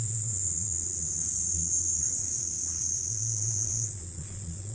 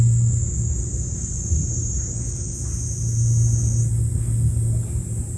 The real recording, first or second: second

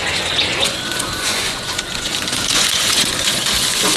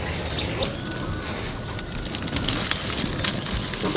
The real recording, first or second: second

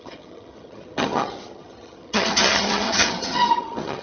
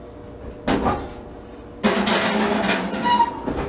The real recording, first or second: second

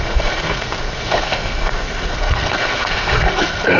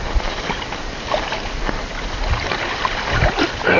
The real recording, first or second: second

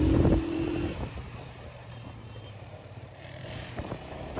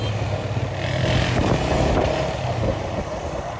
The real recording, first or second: second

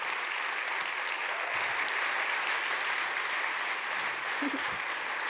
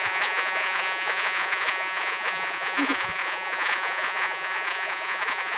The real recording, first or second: first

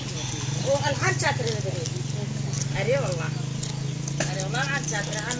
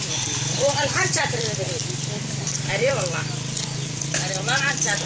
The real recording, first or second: first